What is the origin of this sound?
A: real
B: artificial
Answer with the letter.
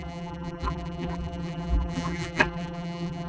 B